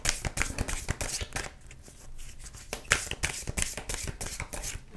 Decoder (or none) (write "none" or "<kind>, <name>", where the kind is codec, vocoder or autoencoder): none